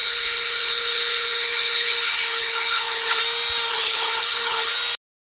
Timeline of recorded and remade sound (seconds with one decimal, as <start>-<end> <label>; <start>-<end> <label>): 0.0-3.2 remade; 3.2-3.7 recorded; 3.7-4.7 remade; 4.7-5.4 recorded